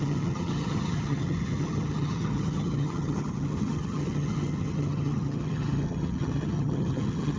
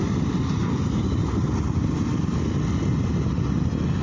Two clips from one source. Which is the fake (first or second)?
first